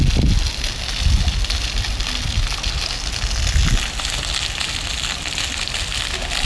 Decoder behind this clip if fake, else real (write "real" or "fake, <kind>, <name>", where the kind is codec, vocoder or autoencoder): real